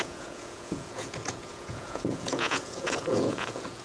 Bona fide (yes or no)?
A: no